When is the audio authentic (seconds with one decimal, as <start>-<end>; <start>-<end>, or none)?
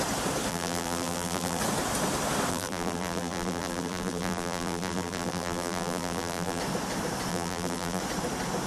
0.0-0.5; 1.6-2.5; 6.6-7.3; 8.0-8.7